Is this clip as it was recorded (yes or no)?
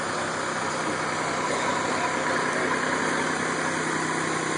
yes